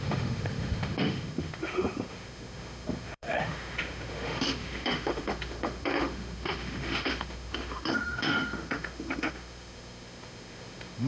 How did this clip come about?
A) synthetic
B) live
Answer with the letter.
A